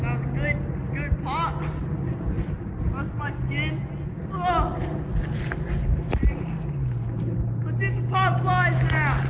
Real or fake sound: real